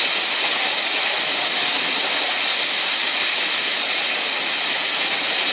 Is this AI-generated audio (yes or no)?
no